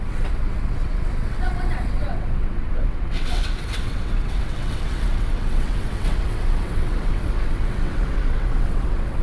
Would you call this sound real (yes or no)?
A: no